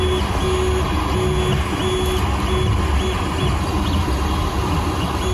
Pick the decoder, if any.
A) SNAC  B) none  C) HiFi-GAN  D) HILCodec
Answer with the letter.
B